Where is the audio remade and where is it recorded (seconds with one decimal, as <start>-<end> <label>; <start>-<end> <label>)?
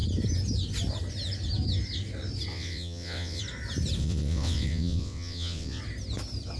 0.0-2.5 recorded; 2.5-3.4 remade; 3.4-4.0 recorded; 4.0-5.8 remade; 5.8-6.6 recorded